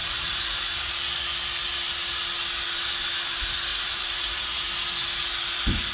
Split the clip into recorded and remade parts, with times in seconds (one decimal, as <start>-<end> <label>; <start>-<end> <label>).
0.0-0.9 remade; 0.9-3.7 recorded; 3.7-4.7 remade; 4.7-5.9 recorded